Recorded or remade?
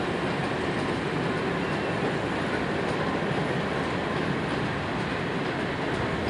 recorded